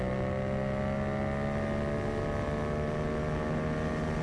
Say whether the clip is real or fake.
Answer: real